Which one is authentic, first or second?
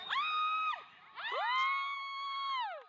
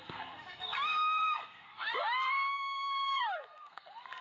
first